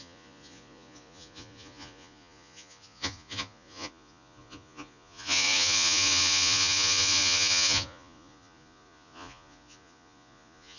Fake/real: fake